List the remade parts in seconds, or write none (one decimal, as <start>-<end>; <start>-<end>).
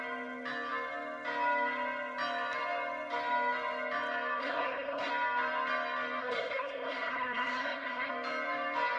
4.4-5.1; 6.2-8.1